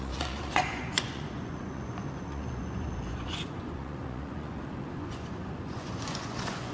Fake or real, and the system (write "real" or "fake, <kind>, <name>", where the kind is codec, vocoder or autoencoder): fake, vocoder, Vocos